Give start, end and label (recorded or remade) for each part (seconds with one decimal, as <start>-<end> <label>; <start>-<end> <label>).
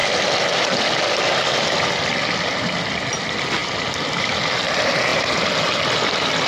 0.0-6.5 recorded